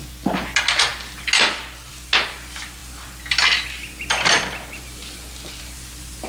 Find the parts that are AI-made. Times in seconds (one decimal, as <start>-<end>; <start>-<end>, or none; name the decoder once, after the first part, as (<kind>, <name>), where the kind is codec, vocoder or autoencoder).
none